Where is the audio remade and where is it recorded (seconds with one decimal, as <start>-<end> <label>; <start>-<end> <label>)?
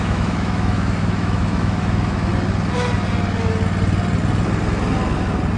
0.0-2.3 remade; 2.3-5.6 recorded